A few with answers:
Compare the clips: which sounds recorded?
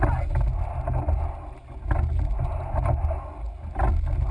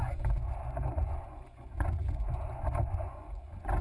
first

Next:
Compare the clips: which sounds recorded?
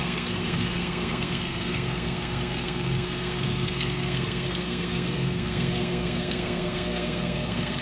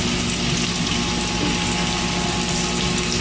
second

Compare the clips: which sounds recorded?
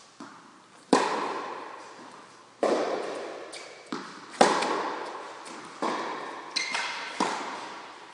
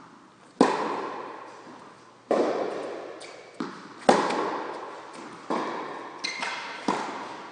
second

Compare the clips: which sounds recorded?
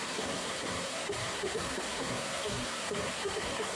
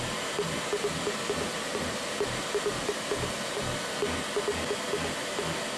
second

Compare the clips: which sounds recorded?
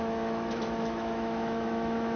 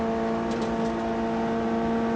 second